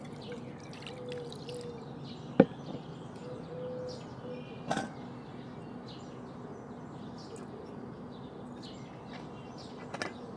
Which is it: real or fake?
real